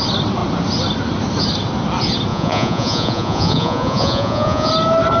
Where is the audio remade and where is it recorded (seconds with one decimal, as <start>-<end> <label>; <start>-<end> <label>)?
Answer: 0.0-2.3 recorded; 2.3-4.7 remade; 4.7-5.2 recorded